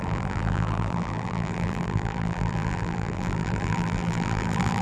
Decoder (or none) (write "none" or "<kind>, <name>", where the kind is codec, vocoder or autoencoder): vocoder, BigVGAN v2